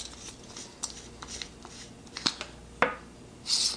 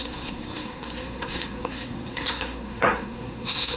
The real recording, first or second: first